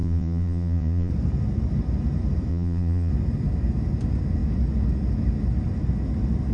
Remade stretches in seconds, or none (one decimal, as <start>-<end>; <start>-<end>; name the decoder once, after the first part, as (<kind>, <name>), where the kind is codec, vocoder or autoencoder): 0.0-1.1 (vocoder, Vocos); 2.5-3.1